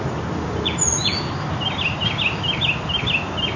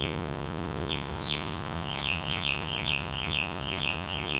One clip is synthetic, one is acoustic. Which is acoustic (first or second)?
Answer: first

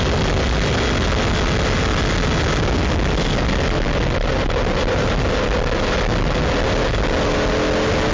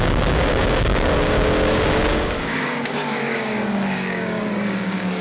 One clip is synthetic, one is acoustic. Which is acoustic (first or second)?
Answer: first